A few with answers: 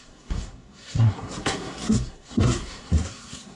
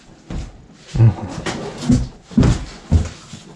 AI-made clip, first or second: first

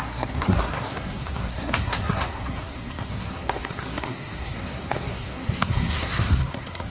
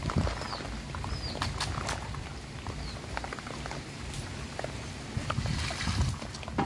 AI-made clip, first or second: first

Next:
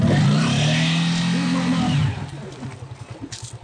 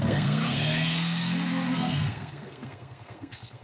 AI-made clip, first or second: second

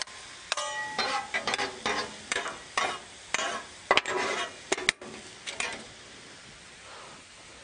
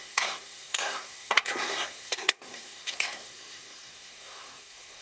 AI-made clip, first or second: second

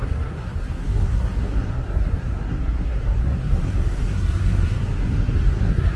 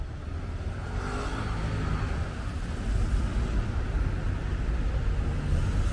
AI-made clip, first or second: first